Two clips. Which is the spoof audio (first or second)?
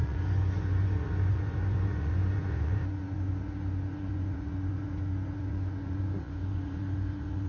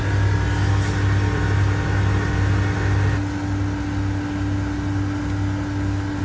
first